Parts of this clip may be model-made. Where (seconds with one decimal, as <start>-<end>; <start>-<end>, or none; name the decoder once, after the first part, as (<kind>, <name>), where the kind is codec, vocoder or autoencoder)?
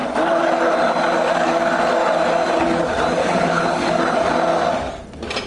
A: 3.2-4.0 (codec, DAC)